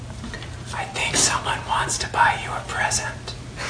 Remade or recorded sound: recorded